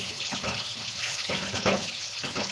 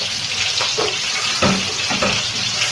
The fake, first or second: first